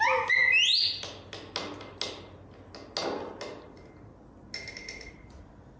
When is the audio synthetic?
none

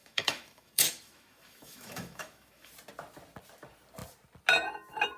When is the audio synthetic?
0.0-2.7 (autoencoder, DAC-VAE)